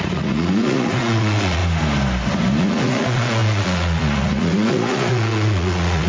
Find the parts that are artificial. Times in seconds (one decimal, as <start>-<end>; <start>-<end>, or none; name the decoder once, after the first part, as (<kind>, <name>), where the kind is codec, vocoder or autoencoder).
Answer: 0.0-1.6 (vocoder, Vocos); 2.6-6.1